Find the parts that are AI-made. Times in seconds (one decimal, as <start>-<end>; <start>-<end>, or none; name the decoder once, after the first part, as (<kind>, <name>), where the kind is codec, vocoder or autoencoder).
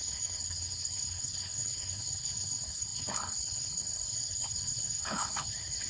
0.0-5.9 (codec, HILCodec)